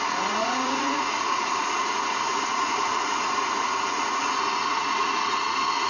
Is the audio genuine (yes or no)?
no